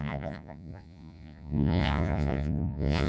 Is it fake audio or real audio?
fake